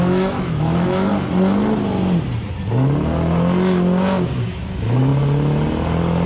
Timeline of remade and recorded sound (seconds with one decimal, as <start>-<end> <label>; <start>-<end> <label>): 0.0-1.1 remade; 1.1-4.4 recorded; 4.4-5.1 remade; 5.1-6.3 recorded